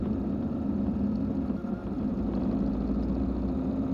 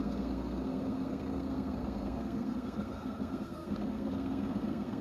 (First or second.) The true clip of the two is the first